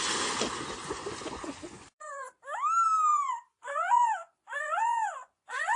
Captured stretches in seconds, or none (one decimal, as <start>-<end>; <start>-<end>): 0.0-0.8; 2.3-3.1